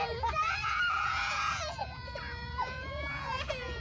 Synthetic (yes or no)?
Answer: yes